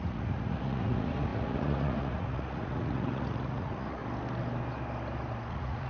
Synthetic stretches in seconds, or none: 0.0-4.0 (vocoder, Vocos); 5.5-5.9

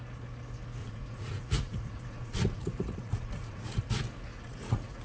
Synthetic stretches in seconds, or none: 0.8-3.8 (vocoder, Vocos); 4.3-5.0

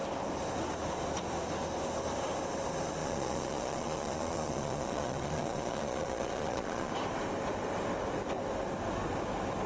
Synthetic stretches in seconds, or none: 3.0-6.9 (vocoder, Vocos)

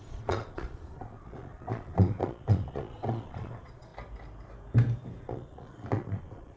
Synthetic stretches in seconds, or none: 0.0-3.9 (vocoder, Vocos); 5.2-6.6

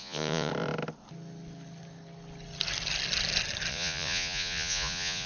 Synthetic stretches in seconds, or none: 0.0-0.5 (vocoder, Vocos); 3.7-5.3

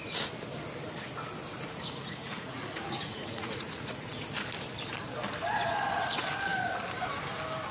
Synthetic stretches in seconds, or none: 1.7-4.1 (vocoder, Vocos)

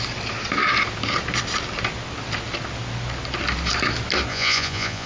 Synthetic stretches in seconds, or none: 4.3-5.1 (vocoder, Vocos)